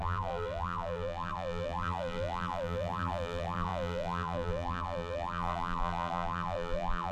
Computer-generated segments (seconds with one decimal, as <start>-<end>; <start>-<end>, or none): 0.0-7.1